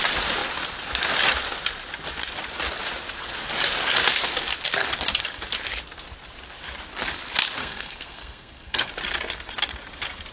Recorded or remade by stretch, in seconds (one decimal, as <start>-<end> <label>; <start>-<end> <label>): 0.0-7.6 recorded; 7.6-8.9 remade; 8.9-10.3 recorded